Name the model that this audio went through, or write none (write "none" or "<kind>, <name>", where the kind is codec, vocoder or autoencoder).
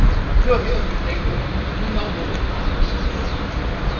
none